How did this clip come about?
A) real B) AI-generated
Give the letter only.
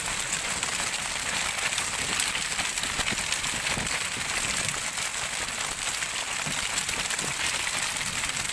A